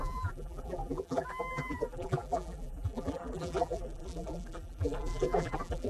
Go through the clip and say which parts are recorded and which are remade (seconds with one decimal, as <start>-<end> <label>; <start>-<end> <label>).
0.0-5.9 remade